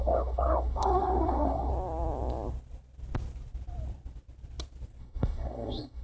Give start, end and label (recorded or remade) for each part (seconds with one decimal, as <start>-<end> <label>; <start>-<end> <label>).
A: 0.0-1.7 remade; 1.7-5.0 recorded; 5.0-6.0 remade